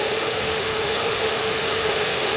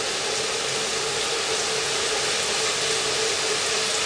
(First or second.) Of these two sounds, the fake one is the first